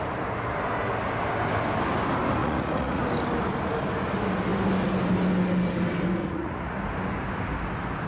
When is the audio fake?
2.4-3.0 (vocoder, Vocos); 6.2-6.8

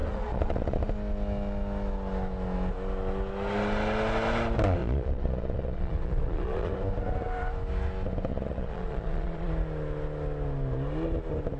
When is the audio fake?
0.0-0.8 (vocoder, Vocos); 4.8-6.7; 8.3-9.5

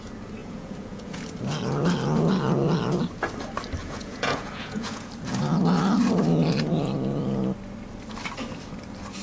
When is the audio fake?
0.4-1.2 (vocoder, Vocos); 3.8-5.1

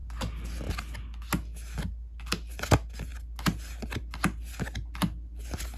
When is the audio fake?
none